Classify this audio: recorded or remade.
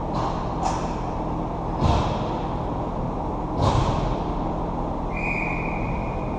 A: recorded